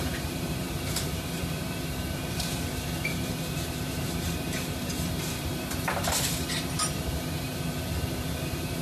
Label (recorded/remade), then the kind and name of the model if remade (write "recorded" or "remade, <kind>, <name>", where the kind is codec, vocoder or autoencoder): remade, vocoder, BigVGAN v2